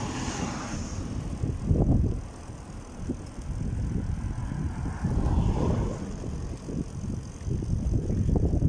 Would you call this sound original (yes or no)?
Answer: yes